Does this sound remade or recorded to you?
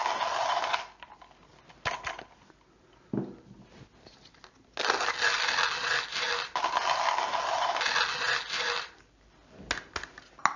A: recorded